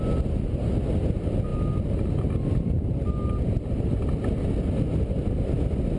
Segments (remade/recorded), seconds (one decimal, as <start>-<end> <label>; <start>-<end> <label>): 0.0-6.0 recorded